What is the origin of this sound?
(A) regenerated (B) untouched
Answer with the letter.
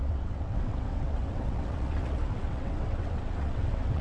A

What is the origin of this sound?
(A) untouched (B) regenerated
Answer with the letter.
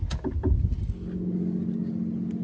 A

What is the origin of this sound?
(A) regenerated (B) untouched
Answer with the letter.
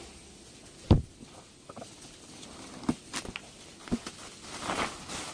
B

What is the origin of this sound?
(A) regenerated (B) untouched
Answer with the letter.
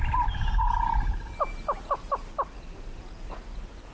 B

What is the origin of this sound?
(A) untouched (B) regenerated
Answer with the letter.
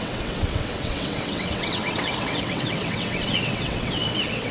B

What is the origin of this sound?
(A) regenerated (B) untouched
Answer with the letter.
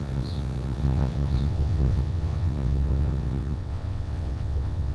A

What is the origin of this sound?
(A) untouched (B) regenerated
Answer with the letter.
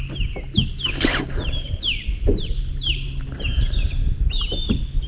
A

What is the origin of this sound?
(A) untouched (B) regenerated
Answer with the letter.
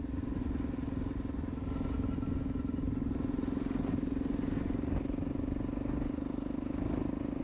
A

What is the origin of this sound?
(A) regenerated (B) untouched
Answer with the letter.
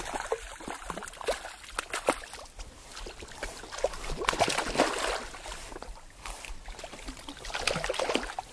B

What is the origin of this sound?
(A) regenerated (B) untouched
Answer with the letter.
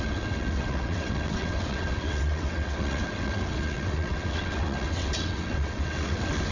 A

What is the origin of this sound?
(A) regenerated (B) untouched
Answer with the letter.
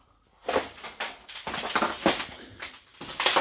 B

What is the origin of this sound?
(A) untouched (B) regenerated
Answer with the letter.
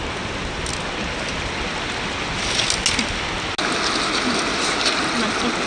A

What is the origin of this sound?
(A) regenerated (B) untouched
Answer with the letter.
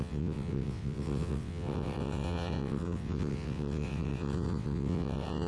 A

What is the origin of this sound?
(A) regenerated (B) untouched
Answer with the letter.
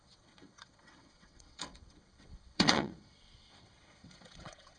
A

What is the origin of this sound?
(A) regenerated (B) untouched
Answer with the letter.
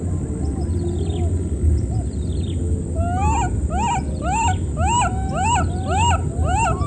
B